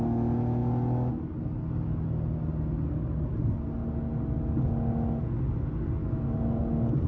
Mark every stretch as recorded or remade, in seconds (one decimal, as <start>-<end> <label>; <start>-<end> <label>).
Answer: 0.0-6.0 recorded; 6.0-6.6 remade; 6.6-7.1 recorded